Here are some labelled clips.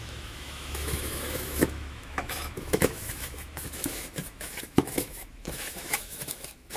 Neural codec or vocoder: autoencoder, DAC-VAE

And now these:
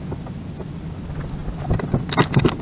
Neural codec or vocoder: none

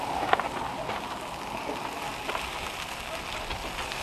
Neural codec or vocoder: none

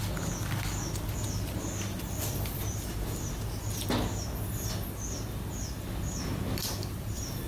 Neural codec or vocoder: none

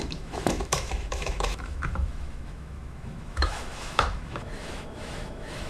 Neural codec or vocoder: autoencoder, DAC-VAE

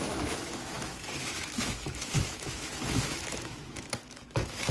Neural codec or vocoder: autoencoder, DAC-VAE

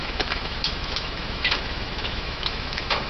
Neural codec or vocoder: autoencoder, DAC-VAE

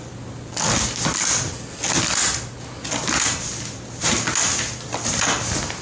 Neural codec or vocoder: none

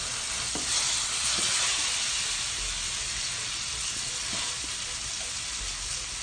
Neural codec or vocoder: none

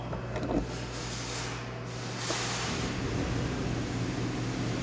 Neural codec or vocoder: none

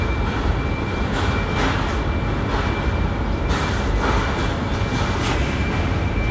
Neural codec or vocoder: none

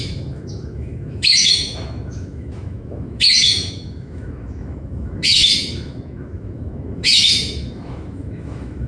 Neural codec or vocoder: autoencoder, DAC-VAE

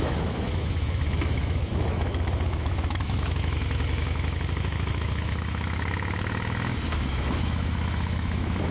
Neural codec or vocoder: autoencoder, DAC-VAE